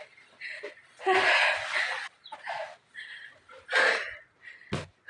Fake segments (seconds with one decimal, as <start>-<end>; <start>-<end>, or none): 2.3-3.3